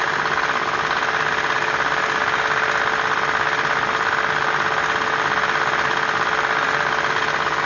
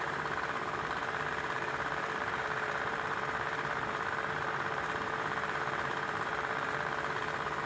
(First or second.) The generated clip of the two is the second